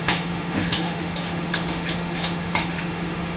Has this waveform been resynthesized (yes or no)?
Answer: yes